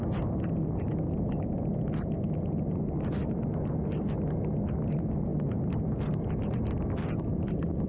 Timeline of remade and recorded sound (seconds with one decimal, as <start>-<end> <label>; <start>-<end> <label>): 0.0-5.3 recorded; 5.3-5.8 remade; 5.8-7.9 recorded